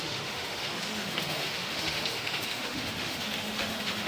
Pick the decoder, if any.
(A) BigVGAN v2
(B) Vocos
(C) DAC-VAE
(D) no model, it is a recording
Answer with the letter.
C